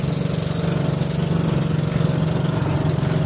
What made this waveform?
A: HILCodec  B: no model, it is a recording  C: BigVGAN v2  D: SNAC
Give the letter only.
B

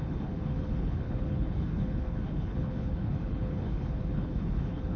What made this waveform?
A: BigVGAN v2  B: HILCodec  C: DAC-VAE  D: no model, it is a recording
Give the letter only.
B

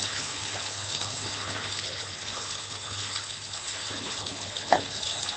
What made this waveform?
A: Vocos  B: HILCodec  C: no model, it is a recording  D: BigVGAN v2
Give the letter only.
B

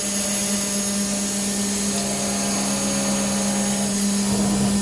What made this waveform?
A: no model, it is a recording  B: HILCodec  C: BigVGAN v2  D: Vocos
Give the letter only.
A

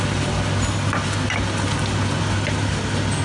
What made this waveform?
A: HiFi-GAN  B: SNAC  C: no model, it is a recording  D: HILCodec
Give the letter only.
C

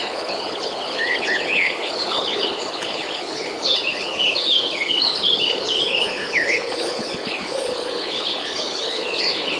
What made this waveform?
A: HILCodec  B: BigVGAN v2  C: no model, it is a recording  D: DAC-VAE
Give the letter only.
A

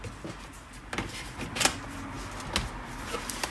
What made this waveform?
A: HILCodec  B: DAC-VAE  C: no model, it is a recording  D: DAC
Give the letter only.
C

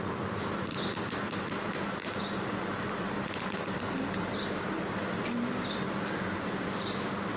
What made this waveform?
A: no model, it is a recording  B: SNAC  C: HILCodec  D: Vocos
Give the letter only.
A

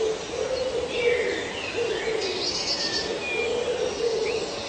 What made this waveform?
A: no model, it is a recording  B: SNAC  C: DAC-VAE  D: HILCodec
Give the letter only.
A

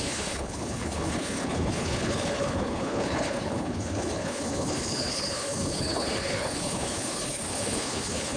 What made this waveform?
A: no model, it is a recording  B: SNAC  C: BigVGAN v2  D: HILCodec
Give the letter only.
D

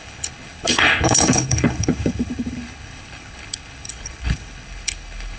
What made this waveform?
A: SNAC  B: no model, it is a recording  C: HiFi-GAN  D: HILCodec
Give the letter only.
D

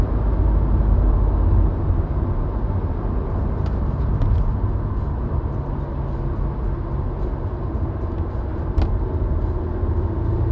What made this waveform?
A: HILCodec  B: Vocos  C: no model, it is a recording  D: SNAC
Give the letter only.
C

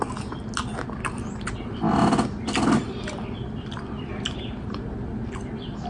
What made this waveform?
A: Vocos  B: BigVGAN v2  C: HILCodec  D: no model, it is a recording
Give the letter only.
D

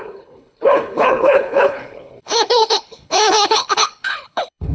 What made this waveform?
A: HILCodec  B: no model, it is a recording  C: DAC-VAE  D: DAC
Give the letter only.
A